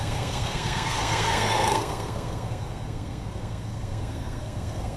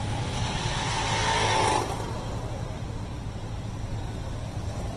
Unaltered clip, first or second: second